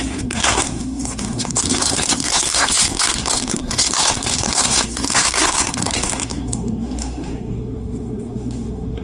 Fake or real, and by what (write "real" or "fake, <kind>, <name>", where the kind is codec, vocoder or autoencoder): fake, codec, SNAC